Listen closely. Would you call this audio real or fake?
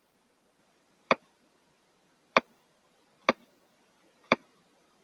fake